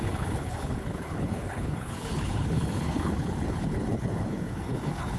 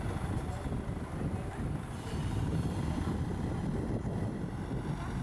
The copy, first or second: first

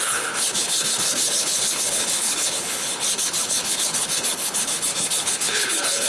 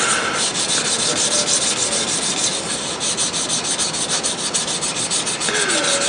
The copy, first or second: first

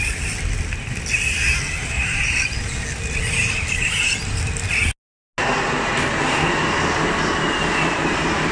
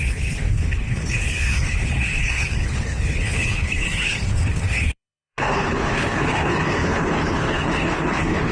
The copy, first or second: second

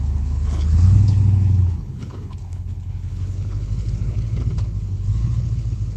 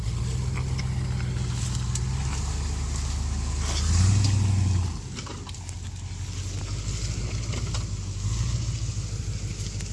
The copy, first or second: first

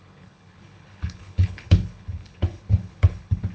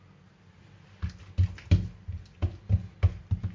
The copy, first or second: first